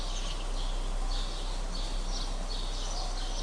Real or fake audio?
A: real